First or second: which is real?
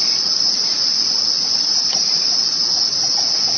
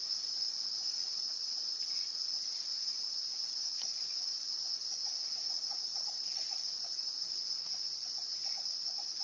first